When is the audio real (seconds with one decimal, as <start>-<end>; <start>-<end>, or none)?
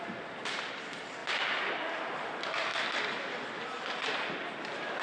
0.0-5.0